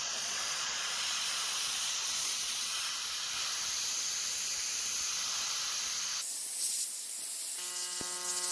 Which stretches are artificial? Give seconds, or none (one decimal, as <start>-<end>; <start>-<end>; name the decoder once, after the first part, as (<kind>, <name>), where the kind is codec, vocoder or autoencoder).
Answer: 0.0-2.9 (vocoder, Vocos)